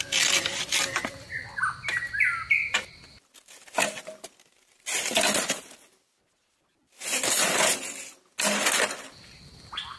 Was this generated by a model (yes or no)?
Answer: no